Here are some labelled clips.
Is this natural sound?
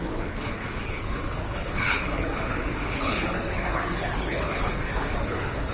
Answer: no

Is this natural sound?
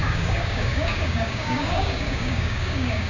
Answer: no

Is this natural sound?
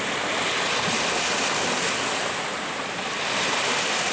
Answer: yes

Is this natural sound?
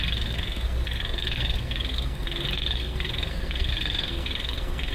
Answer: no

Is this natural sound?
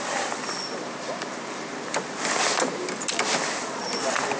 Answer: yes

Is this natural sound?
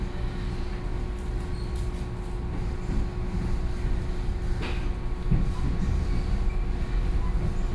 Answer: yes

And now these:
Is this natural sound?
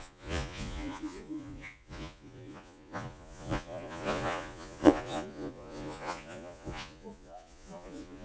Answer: no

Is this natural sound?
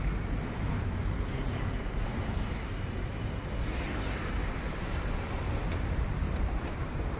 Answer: no